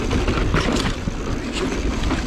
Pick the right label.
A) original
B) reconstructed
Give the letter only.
A